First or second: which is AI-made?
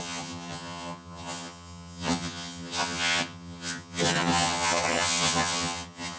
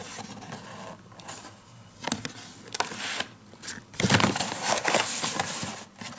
first